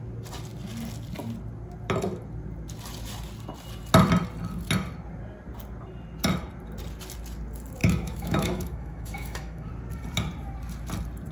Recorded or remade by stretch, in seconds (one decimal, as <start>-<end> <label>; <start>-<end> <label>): 0.0-7.8 recorded; 7.8-9.7 remade; 9.7-11.3 recorded